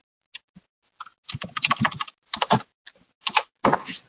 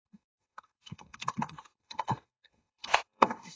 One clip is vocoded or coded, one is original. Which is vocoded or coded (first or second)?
second